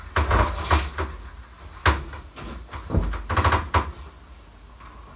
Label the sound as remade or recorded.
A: recorded